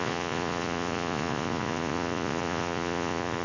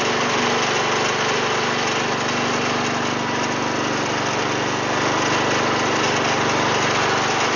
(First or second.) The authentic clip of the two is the second